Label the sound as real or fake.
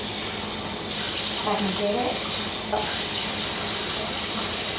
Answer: real